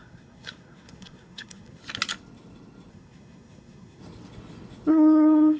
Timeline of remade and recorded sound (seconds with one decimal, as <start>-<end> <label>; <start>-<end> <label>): 0.0-1.8 remade; 1.8-2.9 recorded; 2.9-4.0 remade; 4.0-4.9 recorded; 4.9-5.6 remade